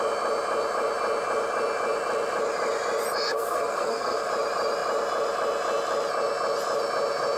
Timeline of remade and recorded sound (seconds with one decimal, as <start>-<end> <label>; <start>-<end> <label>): 0.0-3.3 recorded; 3.3-4.3 remade; 4.3-7.4 recorded